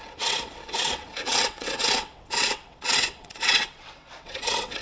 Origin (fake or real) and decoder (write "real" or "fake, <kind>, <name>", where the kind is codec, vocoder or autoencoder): fake, vocoder, WaveNeXt